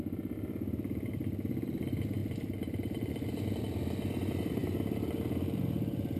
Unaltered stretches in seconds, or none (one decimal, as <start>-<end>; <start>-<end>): 0.0-2.2; 3.1-6.2